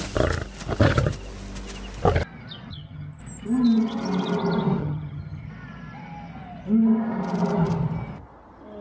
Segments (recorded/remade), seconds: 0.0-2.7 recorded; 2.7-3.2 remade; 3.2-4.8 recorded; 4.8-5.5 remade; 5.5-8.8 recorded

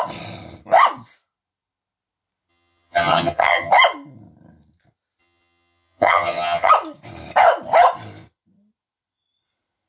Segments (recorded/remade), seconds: 0.0-2.5 recorded; 2.5-3.7 remade; 3.7-5.2 recorded; 5.2-6.7 remade; 6.7-9.9 recorded

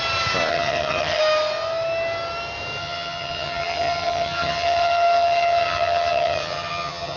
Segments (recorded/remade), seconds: 0.0-0.5 recorded; 0.5-1.2 remade; 1.2-2.8 recorded; 2.8-7.2 remade